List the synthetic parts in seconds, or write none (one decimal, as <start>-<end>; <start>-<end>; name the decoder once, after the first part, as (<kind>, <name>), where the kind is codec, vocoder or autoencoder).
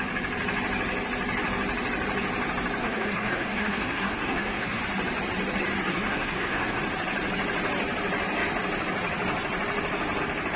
2.8-4.8 (codec, SNAC); 5.9-6.8